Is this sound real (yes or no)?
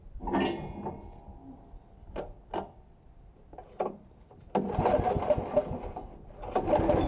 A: yes